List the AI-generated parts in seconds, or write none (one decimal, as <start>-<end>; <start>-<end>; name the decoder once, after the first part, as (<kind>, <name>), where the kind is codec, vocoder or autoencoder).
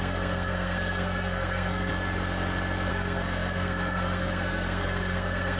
0.0-1.9 (codec, SNAC); 2.9-5.6